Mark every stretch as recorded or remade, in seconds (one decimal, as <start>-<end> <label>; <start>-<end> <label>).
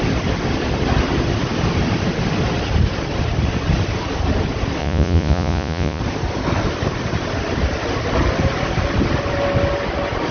0.0-4.8 recorded; 4.8-6.0 remade; 6.0-10.3 recorded